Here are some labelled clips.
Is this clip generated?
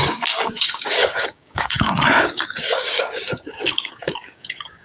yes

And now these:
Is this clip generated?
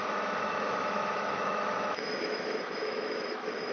yes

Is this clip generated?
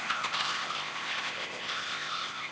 yes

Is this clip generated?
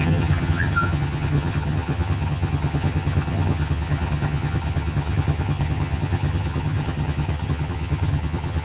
yes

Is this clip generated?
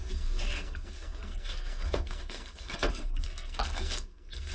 yes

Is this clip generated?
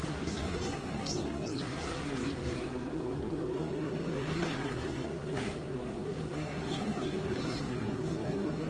yes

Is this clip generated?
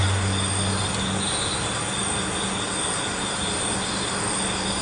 no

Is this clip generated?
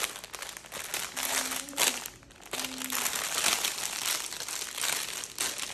no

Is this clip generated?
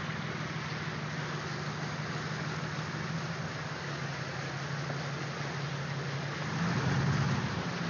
no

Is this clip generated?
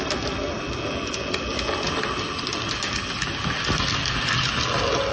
no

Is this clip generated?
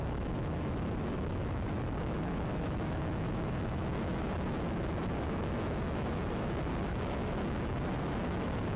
yes